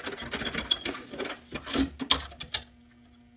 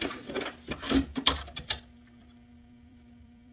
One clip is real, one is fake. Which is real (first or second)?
first